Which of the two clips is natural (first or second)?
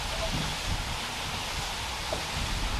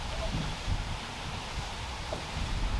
first